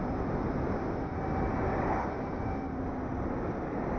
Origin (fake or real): real